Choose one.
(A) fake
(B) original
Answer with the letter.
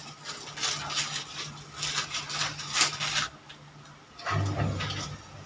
B